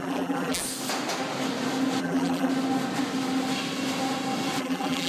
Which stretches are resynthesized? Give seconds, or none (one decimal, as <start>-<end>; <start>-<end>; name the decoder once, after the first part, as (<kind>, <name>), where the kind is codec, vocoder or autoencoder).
0.0-0.6 (vocoder, BigVGAN v2); 2.0-2.5; 4.6-5.1